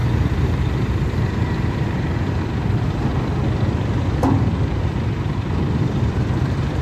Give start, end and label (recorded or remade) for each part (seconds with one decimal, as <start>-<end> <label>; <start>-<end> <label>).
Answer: 0.0-3.1 remade; 3.1-4.7 recorded; 4.7-6.8 remade